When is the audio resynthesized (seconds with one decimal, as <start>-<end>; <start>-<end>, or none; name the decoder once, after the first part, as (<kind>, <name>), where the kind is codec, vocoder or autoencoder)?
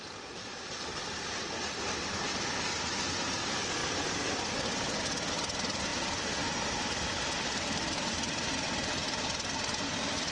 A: 0.5-1.6 (vocoder, BigVGAN v2); 5.9-9.2